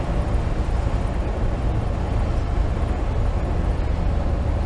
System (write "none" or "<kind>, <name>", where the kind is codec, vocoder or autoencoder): none